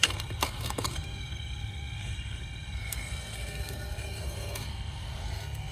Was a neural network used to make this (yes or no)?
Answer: yes